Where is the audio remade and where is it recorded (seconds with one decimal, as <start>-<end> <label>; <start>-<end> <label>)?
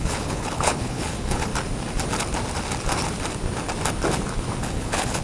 0.0-1.5 remade; 1.5-4.6 recorded; 4.6-5.2 remade